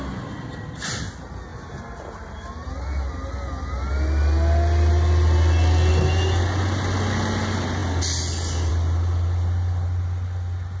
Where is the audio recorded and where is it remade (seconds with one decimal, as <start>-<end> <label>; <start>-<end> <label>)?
0.0-10.8 recorded